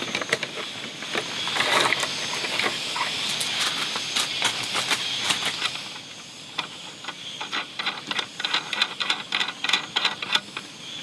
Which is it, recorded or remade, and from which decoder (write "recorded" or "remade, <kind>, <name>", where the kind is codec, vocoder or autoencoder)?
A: recorded